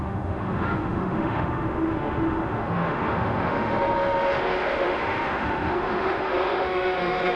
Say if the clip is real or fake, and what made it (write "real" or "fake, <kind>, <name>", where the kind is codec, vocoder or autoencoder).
fake, autoencoder, DAC-VAE